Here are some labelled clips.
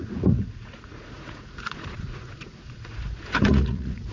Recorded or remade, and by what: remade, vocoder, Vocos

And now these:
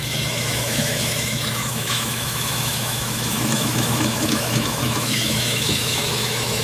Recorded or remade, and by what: remade, autoencoder, DAC-VAE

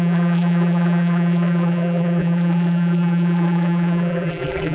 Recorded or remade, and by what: remade, vocoder, BigVGAN v2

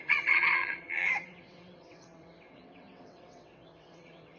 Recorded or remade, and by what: remade, vocoder, WaveNeXt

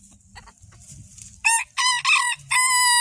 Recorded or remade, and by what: recorded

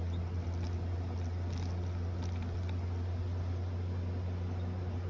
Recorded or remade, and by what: recorded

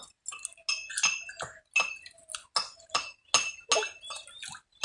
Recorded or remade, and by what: recorded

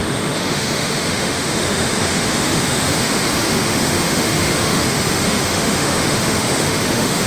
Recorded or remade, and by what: remade, autoencoder, DAC-VAE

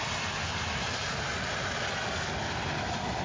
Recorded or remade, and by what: recorded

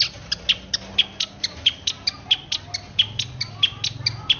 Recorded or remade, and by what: recorded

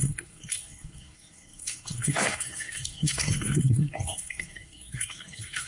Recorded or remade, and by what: remade, codec, SNAC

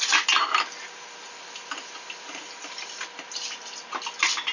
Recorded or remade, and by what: recorded